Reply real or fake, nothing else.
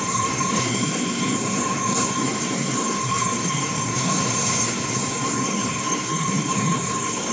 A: fake